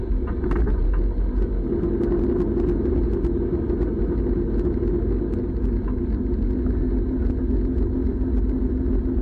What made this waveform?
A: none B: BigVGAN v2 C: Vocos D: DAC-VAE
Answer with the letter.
A